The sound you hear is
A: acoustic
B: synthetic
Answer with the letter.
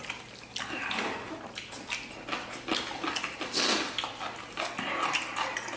A